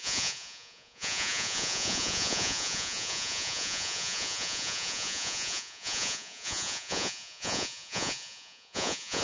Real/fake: fake